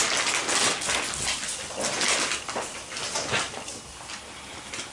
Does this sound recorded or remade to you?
recorded